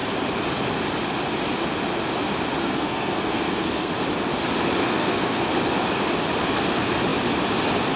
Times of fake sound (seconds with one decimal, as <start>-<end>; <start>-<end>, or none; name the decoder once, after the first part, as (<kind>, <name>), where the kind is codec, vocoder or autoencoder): 2.6-3.9 (codec, SNAC); 4.8-5.5